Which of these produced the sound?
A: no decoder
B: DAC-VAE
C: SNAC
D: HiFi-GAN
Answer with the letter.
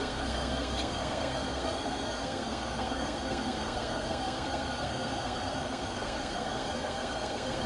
C